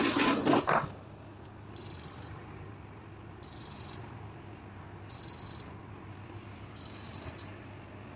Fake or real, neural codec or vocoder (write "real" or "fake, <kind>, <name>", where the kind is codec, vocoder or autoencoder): real